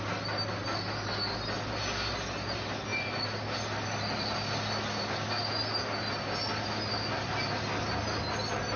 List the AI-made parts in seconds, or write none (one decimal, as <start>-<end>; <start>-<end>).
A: none